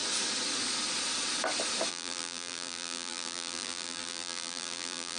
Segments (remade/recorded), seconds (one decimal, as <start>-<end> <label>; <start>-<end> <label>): 0.0-1.9 recorded; 1.9-5.2 remade